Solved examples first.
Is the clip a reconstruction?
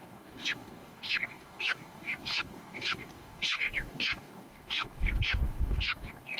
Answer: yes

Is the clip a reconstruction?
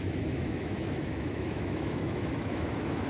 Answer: yes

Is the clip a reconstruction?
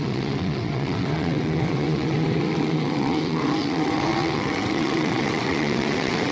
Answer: yes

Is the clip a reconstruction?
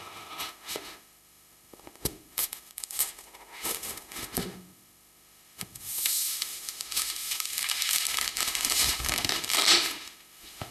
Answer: yes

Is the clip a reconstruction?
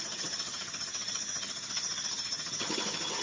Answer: yes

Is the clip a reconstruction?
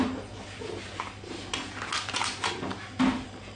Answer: no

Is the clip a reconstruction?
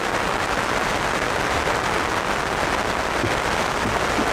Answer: no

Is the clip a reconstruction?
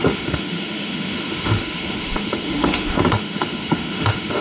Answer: yes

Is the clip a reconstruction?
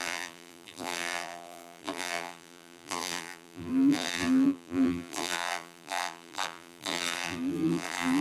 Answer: yes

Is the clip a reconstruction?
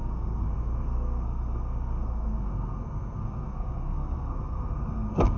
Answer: yes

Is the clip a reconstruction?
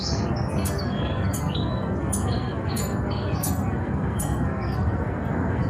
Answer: yes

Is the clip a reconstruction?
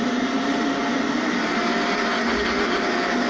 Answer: no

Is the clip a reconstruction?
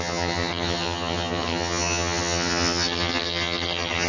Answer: yes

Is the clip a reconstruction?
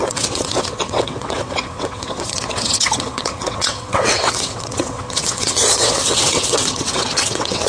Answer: yes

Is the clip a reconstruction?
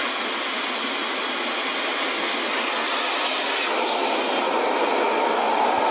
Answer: no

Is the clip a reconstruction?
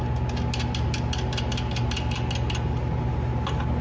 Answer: no